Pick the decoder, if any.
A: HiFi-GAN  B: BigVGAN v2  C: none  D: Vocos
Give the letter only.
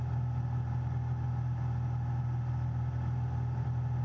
C